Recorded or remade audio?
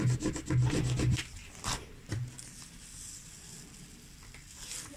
recorded